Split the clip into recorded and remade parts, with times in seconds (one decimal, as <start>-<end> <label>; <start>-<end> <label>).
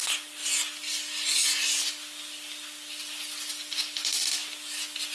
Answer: 0.0-5.1 recorded